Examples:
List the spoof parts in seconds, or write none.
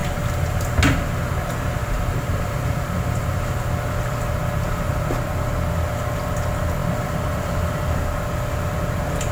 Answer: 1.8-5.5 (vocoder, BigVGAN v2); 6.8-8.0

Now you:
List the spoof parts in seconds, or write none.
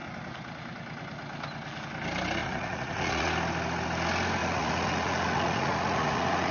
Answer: 2.4-3.3 (vocoder, Vocos); 4.4-6.5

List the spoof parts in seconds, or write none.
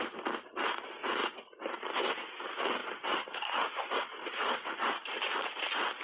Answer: 1.2-2.4 (vocoder, BigVGAN v2); 2.8-5.3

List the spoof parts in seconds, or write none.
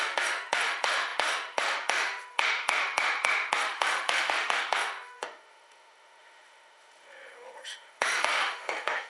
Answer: 0.0-9.1 (autoencoder, DAC-VAE)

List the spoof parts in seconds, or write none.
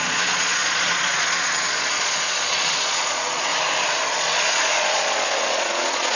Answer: 0.0-3.5 (vocoder, Vocos); 4.1-6.2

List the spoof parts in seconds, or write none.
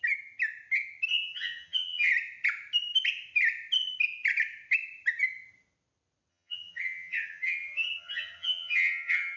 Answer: 1.1-2.1 (vocoder, HiFi-GAN); 6.3-9.4